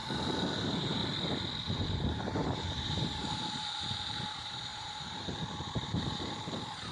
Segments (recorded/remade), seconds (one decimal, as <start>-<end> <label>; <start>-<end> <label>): 0.0-0.6 recorded; 0.6-1.0 remade; 1.0-1.7 recorded; 1.7-6.9 remade